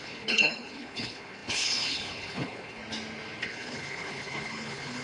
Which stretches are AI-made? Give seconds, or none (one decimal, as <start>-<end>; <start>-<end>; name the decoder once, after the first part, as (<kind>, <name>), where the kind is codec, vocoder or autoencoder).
0.0-2.8 (codec, HILCodec); 3.4-5.0